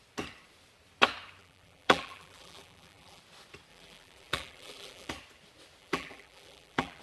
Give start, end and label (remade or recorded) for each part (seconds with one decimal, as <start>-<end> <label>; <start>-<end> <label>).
0.0-1.4 recorded; 1.4-3.2 remade; 3.2-3.7 recorded; 3.7-5.1 remade; 5.1-5.8 recorded; 5.8-7.0 remade